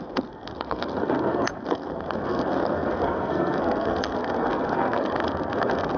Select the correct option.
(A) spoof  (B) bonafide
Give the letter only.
A